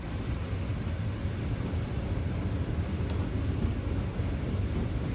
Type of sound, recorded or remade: recorded